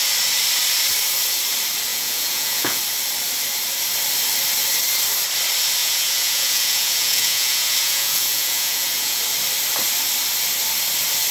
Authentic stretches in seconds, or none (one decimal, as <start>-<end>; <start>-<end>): 0.0-1.9; 2.8-5.8; 9.2-11.3